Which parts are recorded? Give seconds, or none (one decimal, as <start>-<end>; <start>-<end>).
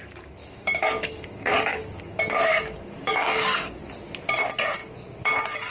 0.0-0.4; 3.8-5.7